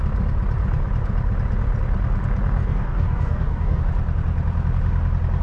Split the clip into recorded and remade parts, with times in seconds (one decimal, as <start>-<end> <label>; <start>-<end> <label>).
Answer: 0.0-2.6 recorded; 2.6-3.8 remade; 3.8-5.4 recorded